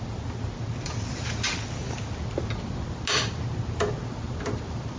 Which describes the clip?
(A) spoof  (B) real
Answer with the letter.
B